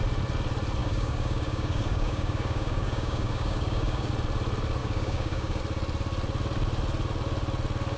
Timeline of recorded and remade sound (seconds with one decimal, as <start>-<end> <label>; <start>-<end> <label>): 0.0-0.8 recorded; 0.8-4.1 remade; 4.1-4.8 recorded; 4.8-5.6 remade; 5.6-8.0 recorded